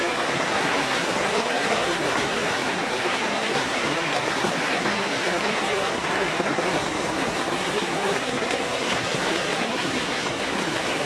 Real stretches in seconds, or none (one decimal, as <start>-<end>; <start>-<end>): none